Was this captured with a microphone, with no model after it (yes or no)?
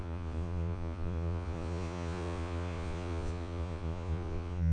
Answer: no